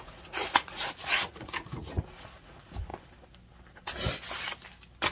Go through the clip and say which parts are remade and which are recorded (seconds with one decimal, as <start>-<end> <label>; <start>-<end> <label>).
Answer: 0.0-2.9 remade; 2.9-5.1 recorded